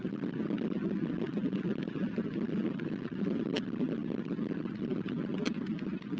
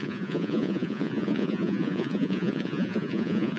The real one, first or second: first